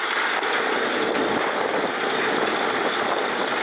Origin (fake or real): fake